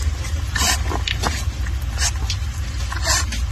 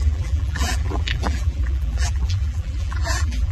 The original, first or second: first